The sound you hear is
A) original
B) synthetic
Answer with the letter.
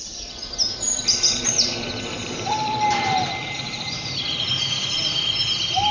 B